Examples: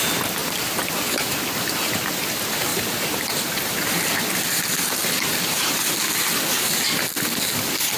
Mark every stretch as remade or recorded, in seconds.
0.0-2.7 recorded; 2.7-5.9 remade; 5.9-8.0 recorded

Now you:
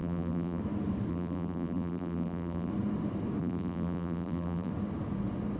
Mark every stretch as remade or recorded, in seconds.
0.0-0.6 remade; 0.6-1.1 recorded; 1.1-2.7 remade; 2.7-3.4 recorded; 3.4-4.7 remade; 4.7-5.6 recorded